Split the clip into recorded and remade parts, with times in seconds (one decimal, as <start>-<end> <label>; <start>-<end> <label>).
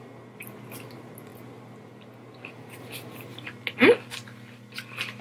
0.0-5.2 recorded